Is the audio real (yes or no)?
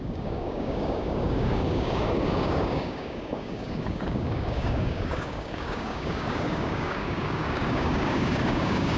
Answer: no